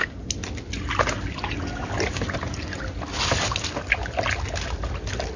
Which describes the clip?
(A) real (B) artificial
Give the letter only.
A